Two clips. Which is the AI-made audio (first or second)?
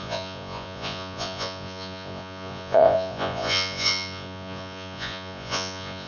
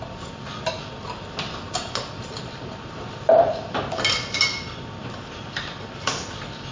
first